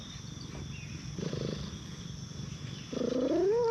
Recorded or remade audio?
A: recorded